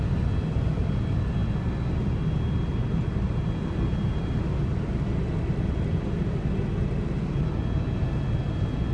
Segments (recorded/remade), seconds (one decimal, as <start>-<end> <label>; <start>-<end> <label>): 0.0-8.9 recorded

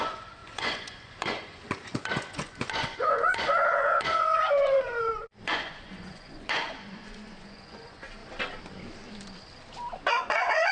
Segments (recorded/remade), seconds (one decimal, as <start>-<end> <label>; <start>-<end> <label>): 0.0-8.2 remade; 8.2-10.1 recorded; 10.1-10.7 remade

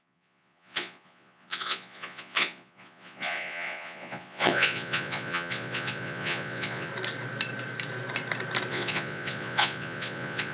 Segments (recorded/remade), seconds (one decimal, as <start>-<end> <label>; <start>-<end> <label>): 0.0-6.9 remade; 6.9-8.7 recorded; 8.7-10.5 remade

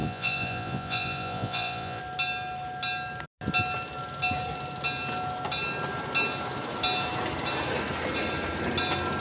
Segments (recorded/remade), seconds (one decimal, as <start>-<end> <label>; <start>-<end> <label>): 0.0-2.0 remade; 2.0-9.2 recorded